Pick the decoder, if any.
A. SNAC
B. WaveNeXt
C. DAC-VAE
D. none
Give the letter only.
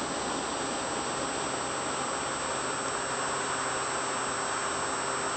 D